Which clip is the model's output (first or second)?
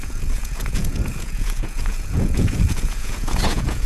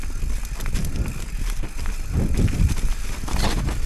first